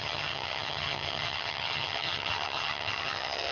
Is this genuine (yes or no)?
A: no